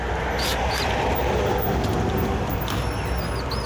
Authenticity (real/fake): real